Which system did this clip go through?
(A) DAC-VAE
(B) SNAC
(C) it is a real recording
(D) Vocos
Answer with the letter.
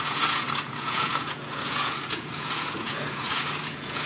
D